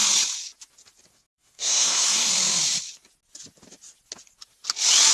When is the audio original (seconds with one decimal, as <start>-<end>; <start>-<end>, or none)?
0.0-1.1; 2.3-5.1